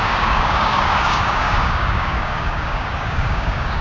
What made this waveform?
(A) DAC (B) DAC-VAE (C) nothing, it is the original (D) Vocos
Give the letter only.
A